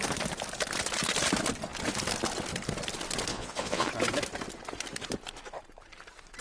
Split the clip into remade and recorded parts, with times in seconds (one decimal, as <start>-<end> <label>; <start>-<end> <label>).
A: 0.0-3.3 recorded; 3.3-3.9 remade; 3.9-6.4 recorded